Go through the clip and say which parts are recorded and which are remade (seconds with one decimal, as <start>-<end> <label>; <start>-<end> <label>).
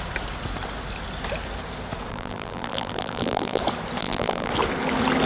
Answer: 0.0-2.1 recorded; 2.1-3.6 remade; 3.6-4.0 recorded; 4.0-4.5 remade; 4.5-5.3 recorded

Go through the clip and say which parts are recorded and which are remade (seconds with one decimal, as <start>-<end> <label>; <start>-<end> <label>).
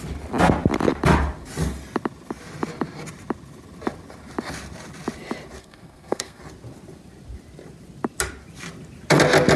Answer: 0.0-5.6 recorded; 5.6-6.4 remade; 6.4-9.6 recorded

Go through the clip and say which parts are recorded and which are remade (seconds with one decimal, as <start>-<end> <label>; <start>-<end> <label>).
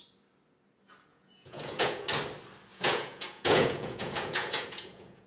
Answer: 0.0-1.1 recorded; 1.1-2.1 remade; 2.1-2.7 recorded; 2.7-5.3 remade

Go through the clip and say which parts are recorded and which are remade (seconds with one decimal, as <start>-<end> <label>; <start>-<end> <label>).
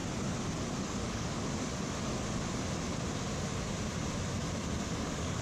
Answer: 0.0-0.8 recorded; 0.8-1.7 remade; 1.7-4.9 recorded; 4.9-5.4 remade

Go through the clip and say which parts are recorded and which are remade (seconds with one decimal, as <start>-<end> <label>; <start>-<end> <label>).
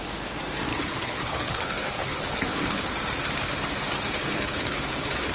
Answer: 0.0-0.7 recorded; 0.7-2.8 remade; 2.8-4.2 recorded; 4.2-5.3 remade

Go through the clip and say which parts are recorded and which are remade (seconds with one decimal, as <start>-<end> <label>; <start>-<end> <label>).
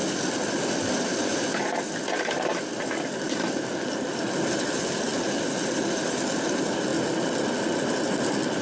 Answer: 0.0-5.1 remade; 5.1-6.4 recorded; 6.4-6.9 remade; 6.9-7.6 recorded; 7.6-8.6 remade